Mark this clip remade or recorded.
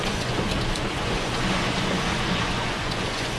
remade